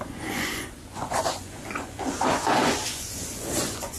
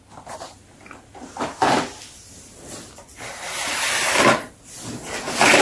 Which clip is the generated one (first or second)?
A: first